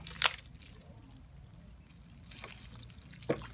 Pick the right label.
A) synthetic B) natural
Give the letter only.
B